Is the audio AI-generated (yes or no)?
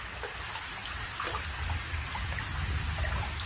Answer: no